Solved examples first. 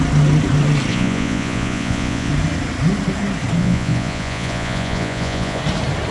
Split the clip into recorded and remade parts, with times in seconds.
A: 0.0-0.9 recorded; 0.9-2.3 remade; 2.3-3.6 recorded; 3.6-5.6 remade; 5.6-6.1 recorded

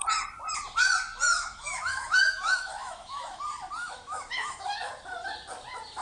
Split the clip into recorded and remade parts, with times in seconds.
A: 0.0-1.3 recorded; 1.3-3.4 remade; 3.4-3.8 recorded; 3.8-4.9 remade; 4.9-6.0 recorded

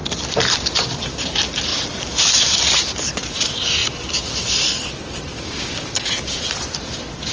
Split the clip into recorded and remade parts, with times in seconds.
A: 0.0-5.3 recorded; 5.3-6.1 remade; 6.1-7.3 recorded